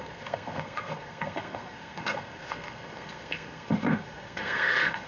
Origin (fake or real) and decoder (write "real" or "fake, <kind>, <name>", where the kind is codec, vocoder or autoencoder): fake, codec, SNAC